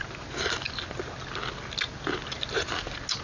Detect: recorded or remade recorded